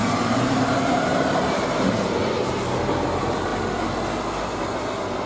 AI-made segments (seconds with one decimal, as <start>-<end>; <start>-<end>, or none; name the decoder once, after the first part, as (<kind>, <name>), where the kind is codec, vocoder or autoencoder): 0.0-2.5 (vocoder, BigVGAN v2)